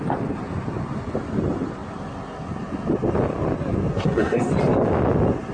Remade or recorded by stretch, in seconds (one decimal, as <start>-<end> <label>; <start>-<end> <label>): 0.0-3.9 recorded; 3.9-4.5 remade; 4.5-5.5 recorded